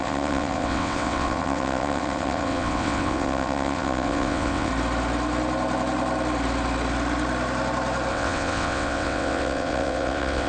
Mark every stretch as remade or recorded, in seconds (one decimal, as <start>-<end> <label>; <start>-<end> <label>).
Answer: 0.0-4.7 remade; 4.7-8.1 recorded; 8.1-10.5 remade